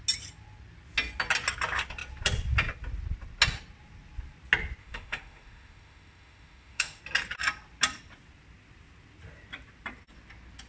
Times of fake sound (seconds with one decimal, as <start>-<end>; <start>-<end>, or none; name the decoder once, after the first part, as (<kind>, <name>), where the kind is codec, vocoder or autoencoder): 4.8-7.0 (autoencoder, DAC-VAE)